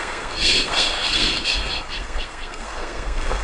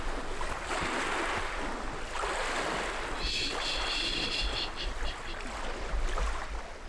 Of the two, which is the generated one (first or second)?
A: first